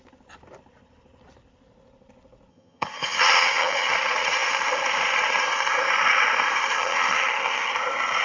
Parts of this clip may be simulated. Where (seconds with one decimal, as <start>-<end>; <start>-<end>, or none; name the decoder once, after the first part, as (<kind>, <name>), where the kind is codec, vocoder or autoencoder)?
2.5-3.9 (vocoder, HiFi-GAN); 6.7-7.7